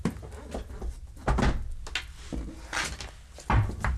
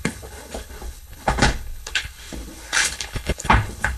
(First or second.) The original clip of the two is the first